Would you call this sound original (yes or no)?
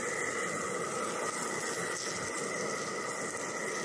yes